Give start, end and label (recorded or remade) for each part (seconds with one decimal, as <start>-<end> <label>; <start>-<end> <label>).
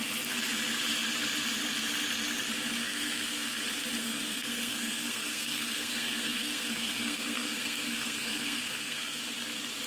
0.0-2.8 recorded; 2.8-3.6 remade; 3.6-4.0 recorded; 4.0-9.2 remade; 9.2-9.9 recorded